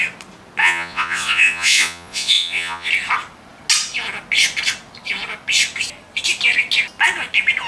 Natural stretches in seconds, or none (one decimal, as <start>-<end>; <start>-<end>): 0.0-0.6; 2.9-7.7